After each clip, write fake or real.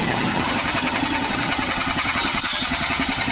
fake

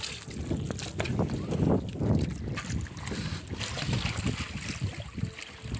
real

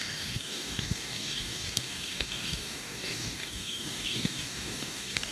fake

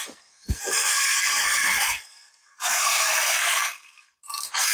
fake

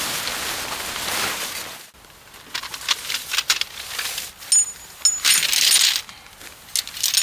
real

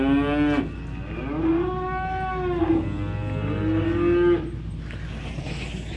real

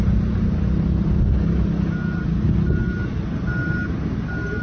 real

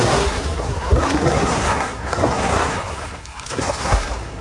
fake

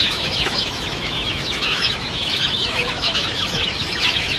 fake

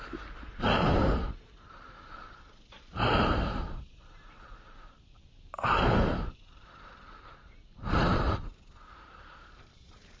fake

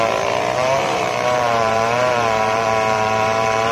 fake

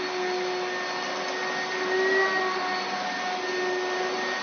real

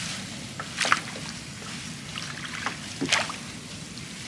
real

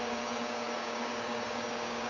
fake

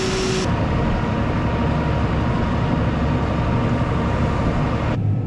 real